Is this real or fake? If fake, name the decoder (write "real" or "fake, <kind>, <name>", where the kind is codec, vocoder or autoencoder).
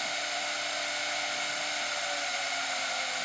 real